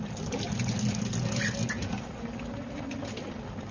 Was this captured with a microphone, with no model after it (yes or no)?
yes